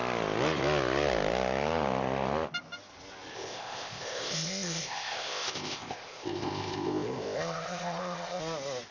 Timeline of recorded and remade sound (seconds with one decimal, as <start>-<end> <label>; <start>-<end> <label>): 0.0-3.3 recorded; 3.3-8.4 remade; 8.4-8.9 recorded